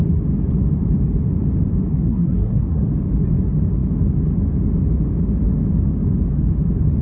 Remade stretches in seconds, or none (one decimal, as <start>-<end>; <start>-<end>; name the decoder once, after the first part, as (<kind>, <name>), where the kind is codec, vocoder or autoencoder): 1.9-2.9 (codec, SNAC)